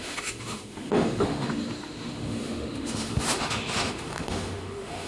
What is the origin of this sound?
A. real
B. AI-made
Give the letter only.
B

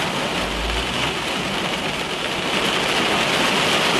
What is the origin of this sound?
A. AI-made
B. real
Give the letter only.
B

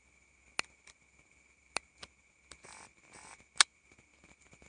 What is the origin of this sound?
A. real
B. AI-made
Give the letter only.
A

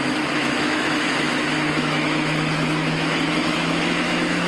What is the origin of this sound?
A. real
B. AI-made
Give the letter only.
B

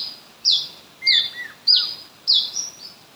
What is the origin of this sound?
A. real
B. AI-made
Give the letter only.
A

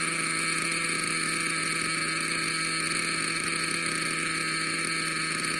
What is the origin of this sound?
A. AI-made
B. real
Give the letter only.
B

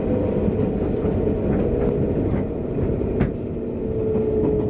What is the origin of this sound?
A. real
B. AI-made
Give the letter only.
A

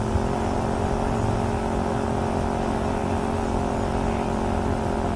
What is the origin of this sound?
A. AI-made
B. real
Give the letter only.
B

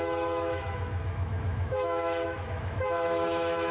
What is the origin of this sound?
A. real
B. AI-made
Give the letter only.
B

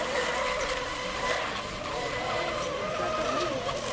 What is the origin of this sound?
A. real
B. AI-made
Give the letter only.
A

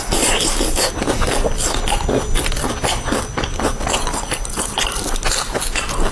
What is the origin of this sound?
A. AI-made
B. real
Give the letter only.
B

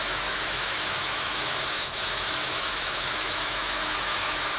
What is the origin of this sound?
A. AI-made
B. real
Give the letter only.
A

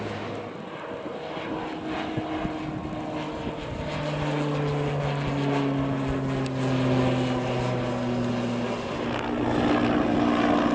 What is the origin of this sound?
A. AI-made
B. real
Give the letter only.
B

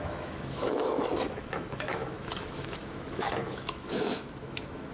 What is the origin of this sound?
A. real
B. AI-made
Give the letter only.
B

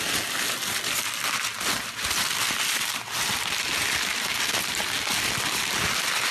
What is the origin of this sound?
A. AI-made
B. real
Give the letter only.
B